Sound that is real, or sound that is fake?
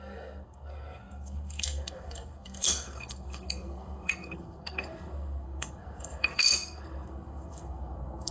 fake